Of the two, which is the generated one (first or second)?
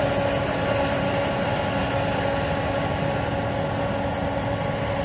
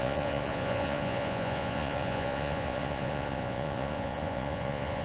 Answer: second